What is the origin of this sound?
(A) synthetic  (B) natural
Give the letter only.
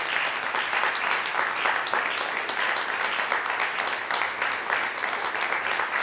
B